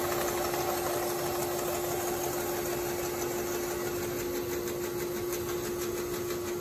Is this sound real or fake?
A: real